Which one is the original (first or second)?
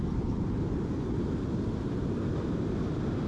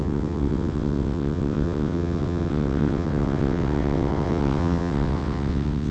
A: first